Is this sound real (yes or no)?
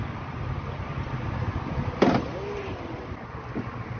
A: yes